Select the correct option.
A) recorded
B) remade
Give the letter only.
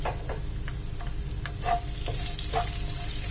A